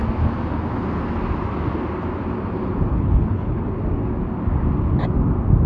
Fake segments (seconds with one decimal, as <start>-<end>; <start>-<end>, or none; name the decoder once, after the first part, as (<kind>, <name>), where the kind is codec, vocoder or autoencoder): 2.9-3.7 (codec, HILCodec)